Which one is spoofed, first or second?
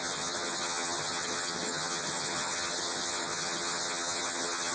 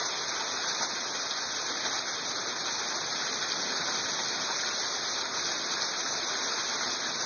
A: first